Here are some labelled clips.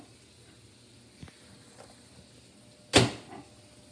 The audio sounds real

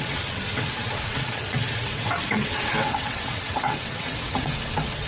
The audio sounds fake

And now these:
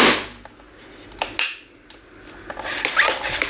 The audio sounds real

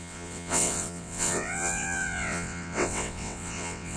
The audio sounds fake